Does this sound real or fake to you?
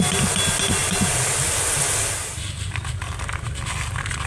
real